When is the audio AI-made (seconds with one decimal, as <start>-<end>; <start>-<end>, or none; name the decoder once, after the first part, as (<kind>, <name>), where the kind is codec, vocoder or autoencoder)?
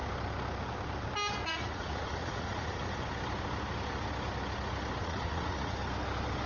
1.5-3.0 (vocoder, Vocos); 5.0-5.8